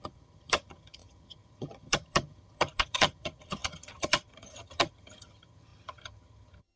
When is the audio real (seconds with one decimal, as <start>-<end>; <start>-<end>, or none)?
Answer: none